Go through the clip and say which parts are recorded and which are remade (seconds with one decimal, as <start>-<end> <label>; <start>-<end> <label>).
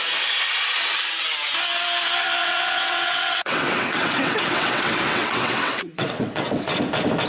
0.0-2.4 recorded; 2.4-6.8 remade; 6.8-7.3 recorded